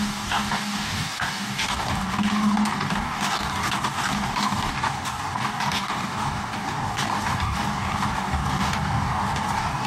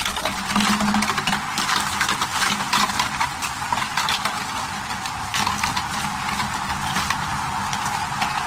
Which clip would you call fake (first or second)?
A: first